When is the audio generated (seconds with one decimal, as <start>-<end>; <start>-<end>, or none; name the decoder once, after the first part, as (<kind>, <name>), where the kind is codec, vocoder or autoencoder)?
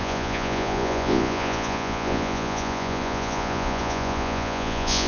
0.0-5.1 (vocoder, Vocos)